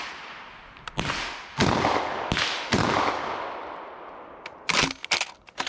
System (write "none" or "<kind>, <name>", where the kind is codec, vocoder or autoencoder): none